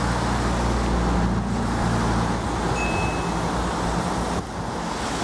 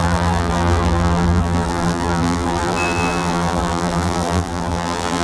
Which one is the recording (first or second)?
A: first